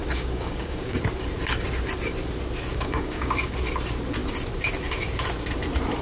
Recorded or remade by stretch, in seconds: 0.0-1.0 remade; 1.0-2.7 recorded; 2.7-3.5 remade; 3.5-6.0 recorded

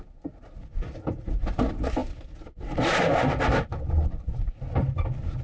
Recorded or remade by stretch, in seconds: 0.0-5.4 recorded

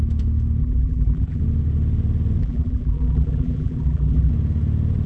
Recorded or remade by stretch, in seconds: 0.0-0.6 recorded; 0.6-1.4 remade; 1.4-2.4 recorded; 2.4-4.3 remade; 4.3-5.1 recorded